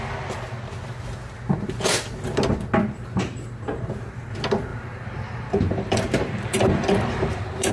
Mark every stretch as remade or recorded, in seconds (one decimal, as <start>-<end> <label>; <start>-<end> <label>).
0.0-4.7 recorded; 4.7-7.7 remade